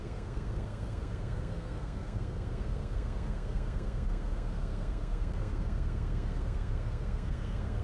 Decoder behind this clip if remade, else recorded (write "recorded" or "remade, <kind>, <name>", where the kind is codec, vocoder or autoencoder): remade, codec, SNAC